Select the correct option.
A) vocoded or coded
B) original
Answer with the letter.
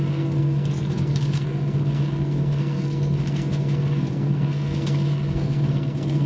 A